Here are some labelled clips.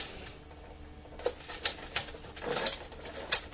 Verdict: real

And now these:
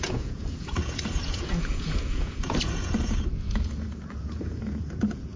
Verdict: fake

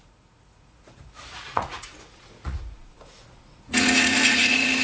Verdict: fake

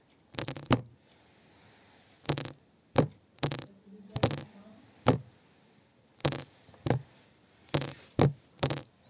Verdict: real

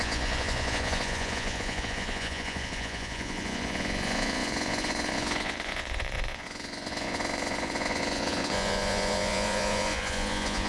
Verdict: fake